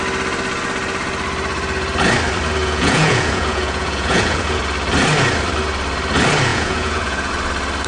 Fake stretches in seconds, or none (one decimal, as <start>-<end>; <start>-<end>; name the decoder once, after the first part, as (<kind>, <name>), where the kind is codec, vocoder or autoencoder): 2.6-4.6 (vocoder, Vocos); 6.5-7.3